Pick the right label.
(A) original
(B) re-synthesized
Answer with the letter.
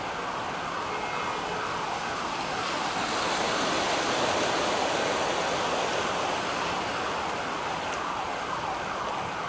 A